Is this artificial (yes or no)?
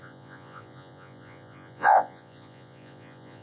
yes